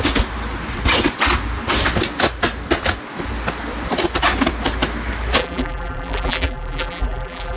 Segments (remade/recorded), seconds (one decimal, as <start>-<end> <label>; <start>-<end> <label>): 0.0-5.4 recorded; 5.4-7.6 remade